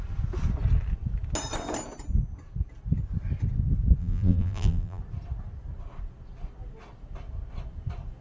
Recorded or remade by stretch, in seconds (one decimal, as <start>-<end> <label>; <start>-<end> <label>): 0.0-4.0 recorded; 4.0-5.0 remade; 5.0-8.2 recorded